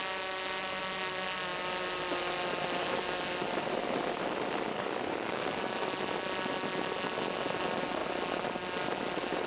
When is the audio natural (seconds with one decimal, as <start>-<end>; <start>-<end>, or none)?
0.0-4.7; 5.6-9.5